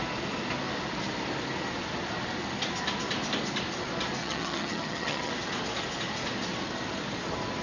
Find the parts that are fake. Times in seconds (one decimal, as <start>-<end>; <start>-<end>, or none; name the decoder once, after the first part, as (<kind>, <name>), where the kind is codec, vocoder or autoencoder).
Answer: 4.2-5.3 (vocoder, HiFi-GAN)